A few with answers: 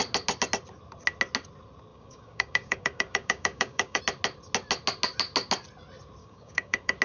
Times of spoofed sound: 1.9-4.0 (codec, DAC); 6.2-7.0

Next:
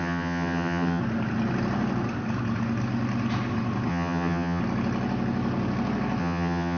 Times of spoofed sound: 0.0-1.0 (vocoder, HiFi-GAN); 3.9-4.6; 6.2-6.8

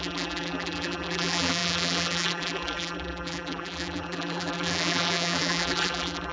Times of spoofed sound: 0.0-6.3 (vocoder, BigVGAN v2)

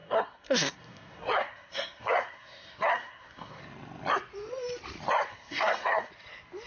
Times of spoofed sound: 0.0-3.6 (codec, SNAC); 5.3-6.1